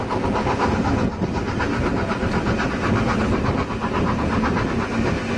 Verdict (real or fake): real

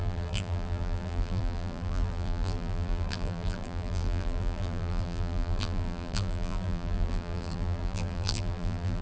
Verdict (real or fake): fake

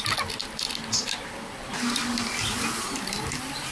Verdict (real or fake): real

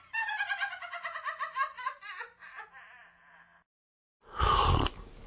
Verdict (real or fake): real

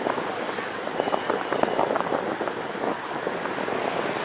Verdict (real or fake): real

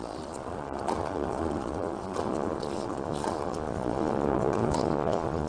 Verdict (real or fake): fake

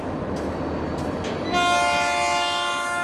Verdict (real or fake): real